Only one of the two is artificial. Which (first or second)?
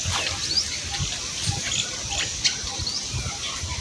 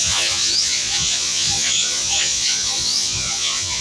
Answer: second